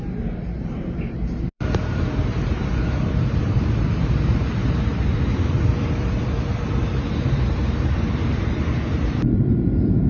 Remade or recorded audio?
remade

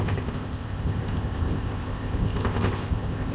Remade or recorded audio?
remade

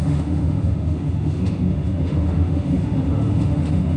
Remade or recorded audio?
remade